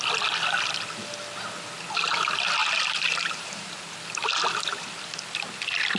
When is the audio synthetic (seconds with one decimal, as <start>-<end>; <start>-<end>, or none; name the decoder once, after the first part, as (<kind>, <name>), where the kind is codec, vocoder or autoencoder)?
2.6-3.8 (vocoder, BigVGAN v2)